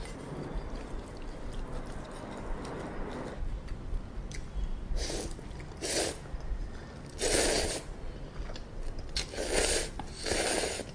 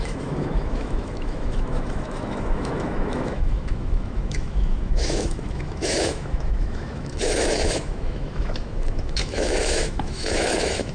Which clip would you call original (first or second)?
first